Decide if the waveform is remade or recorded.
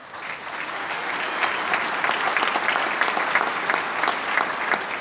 recorded